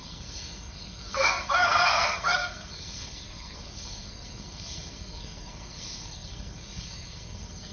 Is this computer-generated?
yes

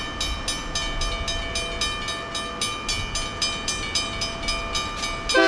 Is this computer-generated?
no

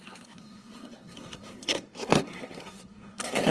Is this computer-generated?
yes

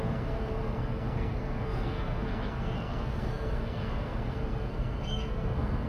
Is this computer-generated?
yes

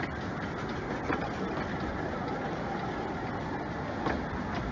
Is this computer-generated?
no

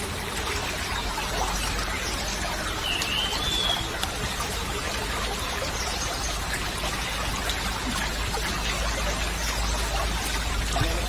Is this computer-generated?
no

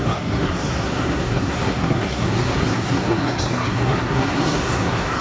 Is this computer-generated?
yes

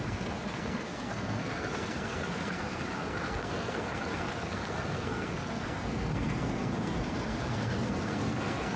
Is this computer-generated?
yes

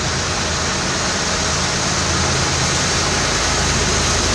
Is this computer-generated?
no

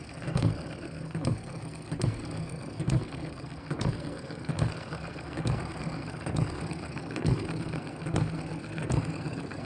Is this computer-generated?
yes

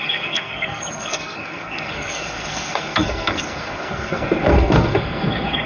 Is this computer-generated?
yes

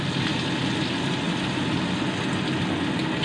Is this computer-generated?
no